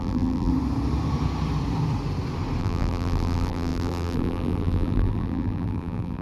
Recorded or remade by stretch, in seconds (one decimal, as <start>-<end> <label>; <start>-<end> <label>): 0.0-0.5 remade; 0.5-2.6 recorded; 2.6-6.2 remade